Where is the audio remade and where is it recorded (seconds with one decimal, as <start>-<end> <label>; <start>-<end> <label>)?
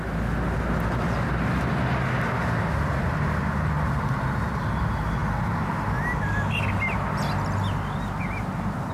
0.0-8.9 recorded